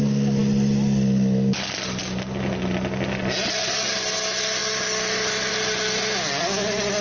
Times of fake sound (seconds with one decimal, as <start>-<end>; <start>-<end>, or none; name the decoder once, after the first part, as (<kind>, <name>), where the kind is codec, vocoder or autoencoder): none